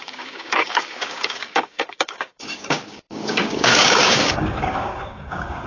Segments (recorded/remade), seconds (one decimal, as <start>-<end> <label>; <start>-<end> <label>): 0.0-5.7 remade